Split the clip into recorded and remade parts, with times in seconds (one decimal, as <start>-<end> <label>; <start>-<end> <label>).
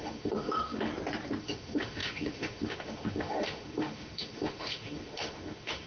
0.0-0.9 remade; 0.9-1.4 recorded; 1.4-5.9 remade